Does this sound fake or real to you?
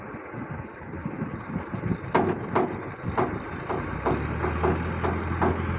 real